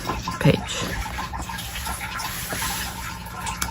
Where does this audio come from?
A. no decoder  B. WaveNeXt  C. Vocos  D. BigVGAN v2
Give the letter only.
D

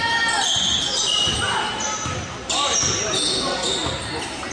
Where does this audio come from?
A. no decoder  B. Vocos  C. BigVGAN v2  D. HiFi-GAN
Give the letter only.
A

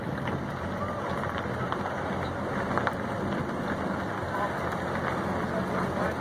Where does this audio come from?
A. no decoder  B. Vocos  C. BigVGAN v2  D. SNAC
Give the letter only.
A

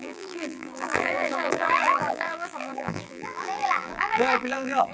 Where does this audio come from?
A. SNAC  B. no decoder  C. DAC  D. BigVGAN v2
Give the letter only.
D